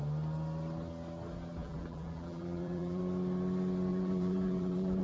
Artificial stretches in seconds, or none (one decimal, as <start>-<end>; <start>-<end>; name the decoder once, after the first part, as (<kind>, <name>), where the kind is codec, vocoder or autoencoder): 1.6-3.0 (vocoder, BigVGAN v2); 3.9-5.0